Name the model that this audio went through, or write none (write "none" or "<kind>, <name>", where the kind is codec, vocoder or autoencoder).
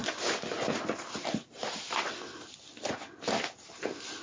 none